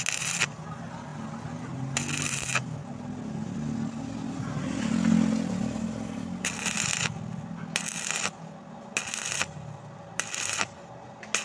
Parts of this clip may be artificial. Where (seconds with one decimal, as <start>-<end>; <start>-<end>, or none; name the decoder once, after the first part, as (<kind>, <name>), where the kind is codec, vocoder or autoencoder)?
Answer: none